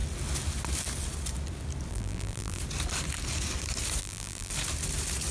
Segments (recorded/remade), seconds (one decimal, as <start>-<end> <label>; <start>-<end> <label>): 0.0-1.9 recorded; 1.9-2.6 remade; 2.6-4.0 recorded; 4.0-4.5 remade; 4.5-5.3 recorded